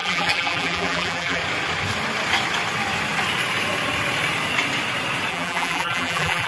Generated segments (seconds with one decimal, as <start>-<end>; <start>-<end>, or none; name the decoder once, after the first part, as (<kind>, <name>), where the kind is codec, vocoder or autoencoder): 0.0-1.4 (vocoder, BigVGAN v2); 5.3-6.5